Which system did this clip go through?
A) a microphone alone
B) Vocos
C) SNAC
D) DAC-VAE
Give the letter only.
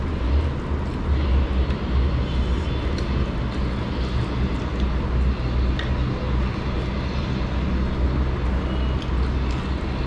A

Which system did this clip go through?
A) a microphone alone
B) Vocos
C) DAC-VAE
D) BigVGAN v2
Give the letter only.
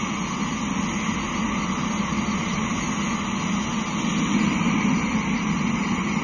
A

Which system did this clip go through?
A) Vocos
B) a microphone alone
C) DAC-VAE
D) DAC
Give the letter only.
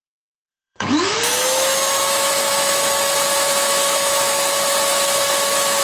C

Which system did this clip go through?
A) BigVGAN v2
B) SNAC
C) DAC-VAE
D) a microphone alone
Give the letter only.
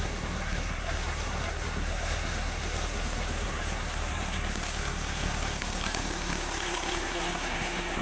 B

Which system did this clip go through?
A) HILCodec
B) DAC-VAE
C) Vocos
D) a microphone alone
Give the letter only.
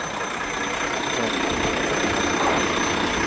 D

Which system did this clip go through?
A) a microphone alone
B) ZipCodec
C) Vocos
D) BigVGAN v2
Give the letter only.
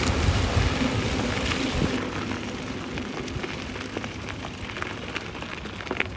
A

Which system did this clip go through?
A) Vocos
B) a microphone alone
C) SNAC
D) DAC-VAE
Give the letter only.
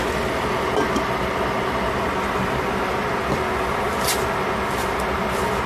B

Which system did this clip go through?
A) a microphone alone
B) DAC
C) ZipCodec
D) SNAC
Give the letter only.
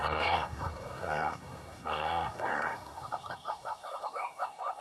D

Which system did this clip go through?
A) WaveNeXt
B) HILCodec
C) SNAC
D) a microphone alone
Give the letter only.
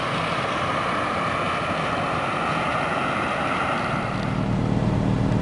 D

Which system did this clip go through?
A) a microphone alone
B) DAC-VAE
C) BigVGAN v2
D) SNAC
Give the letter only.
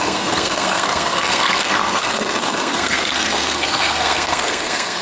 D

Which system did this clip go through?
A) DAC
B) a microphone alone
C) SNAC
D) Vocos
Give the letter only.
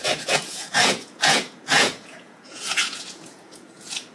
D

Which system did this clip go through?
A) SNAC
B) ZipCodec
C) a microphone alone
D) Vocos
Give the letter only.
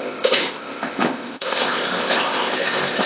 B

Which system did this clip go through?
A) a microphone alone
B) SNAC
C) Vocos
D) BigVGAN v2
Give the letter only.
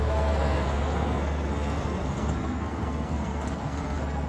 B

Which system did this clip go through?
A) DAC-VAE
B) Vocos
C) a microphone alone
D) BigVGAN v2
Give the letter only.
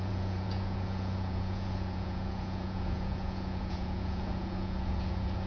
B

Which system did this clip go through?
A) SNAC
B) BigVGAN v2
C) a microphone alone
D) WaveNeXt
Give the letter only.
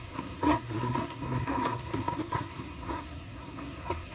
A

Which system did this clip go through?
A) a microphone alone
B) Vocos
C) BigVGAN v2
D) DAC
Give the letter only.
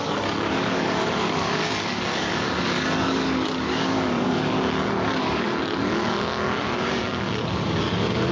D